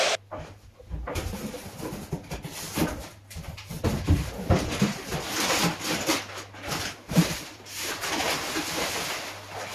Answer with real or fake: fake